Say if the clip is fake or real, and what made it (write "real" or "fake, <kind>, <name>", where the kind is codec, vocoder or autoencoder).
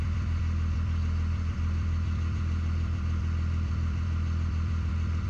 fake, vocoder, BigVGAN v2